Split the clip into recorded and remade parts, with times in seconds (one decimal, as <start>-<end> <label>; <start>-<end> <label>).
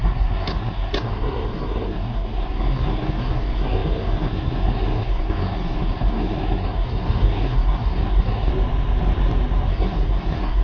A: 0.0-8.5 remade; 8.5-9.7 recorded; 9.7-10.6 remade